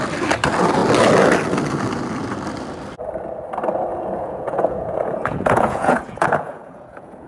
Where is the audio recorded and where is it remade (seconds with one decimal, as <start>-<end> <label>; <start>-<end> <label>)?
0.0-3.9 recorded; 3.9-7.3 remade